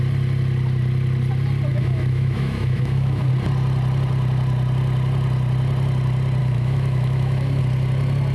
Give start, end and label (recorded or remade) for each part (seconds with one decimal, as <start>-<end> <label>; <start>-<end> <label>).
0.0-1.7 recorded; 1.7-3.3 remade; 3.3-6.4 recorded; 6.4-7.6 remade; 7.6-8.3 recorded